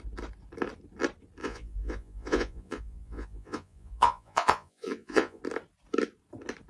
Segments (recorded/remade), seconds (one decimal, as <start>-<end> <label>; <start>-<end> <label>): 0.0-1.4 recorded; 1.4-5.4 remade; 5.4-6.7 recorded